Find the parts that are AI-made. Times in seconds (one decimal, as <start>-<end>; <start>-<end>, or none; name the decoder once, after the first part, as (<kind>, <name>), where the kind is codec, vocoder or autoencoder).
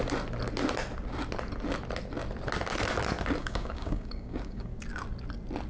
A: 3.4-4.7 (codec, DAC)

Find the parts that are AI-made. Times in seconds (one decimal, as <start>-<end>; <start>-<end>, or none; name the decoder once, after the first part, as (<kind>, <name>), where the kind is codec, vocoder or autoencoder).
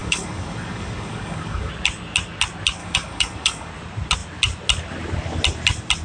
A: 0.0-1.7 (codec, DAC); 2.8-3.7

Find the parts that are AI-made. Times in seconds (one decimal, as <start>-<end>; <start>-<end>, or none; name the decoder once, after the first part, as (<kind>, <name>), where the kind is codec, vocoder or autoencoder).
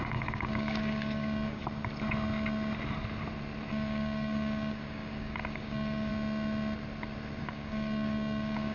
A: 0.0-1.6 (codec, DAC); 3.7-6.1; 7.4-8.7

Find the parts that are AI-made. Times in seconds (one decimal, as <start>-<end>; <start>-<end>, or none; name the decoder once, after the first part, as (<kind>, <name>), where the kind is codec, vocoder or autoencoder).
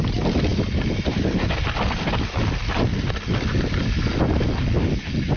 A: none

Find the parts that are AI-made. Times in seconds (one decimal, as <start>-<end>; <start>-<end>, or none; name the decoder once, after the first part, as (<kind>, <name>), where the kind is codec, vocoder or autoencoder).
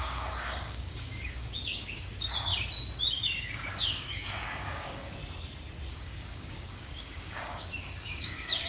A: 0.0-2.5 (codec, DAC); 3.1-5.2; 5.9-8.7